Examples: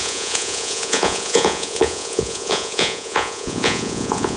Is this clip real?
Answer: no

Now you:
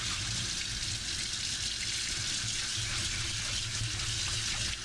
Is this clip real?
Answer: yes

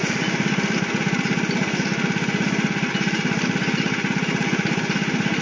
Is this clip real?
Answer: yes